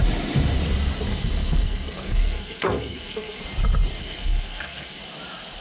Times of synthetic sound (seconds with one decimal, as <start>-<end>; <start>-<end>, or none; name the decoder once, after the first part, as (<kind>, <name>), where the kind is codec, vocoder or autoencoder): 1.1-3.4 (codec, SNAC); 4.0-5.0